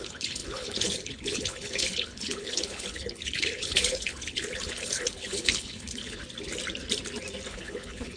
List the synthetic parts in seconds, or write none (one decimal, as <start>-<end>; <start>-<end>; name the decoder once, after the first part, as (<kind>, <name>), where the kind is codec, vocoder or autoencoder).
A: 0.0-6.2 (codec, HILCodec); 7.5-8.2